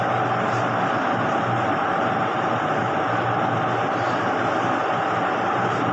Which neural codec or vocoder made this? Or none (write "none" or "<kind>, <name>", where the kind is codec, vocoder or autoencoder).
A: none